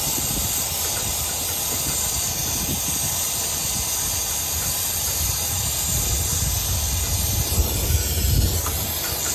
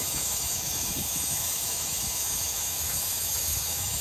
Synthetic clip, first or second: second